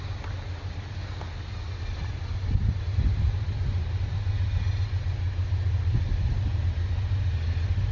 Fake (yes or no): no